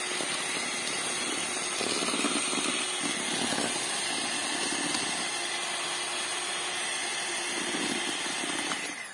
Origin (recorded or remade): recorded